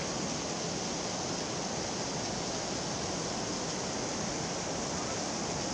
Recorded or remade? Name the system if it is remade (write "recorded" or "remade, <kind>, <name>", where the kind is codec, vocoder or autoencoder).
recorded